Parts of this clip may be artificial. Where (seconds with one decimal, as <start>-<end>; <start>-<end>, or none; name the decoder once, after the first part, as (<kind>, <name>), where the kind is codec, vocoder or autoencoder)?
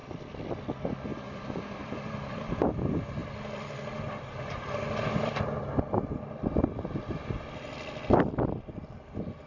0.0-0.6 (vocoder, BigVGAN v2); 1.1-2.6; 3.2-7.1